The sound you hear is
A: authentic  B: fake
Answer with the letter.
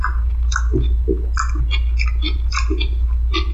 A